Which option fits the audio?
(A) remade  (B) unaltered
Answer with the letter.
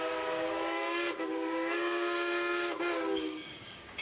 A